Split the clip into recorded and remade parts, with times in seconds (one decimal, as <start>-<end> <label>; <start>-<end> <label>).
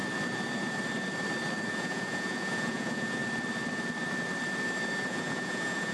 0.0-1.7 recorded; 1.7-3.2 remade; 3.2-5.1 recorded; 5.1-5.9 remade